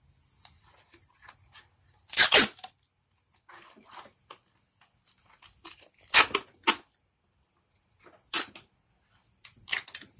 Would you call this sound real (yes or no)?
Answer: yes